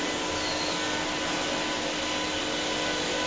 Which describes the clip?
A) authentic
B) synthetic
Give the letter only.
A